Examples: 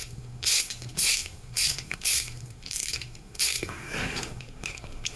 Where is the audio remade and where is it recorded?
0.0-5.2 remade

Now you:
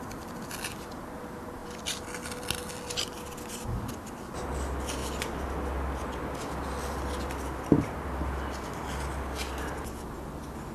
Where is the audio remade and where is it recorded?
0.0-10.7 recorded

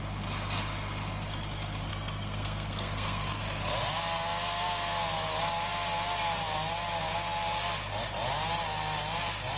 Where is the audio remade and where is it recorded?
0.0-1.9 recorded; 1.9-3.4 remade; 3.4-9.6 recorded

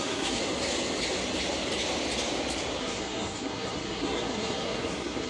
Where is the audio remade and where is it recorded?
0.0-0.4 remade; 0.4-2.8 recorded; 2.8-5.3 remade